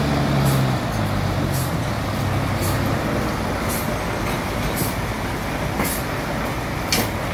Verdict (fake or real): real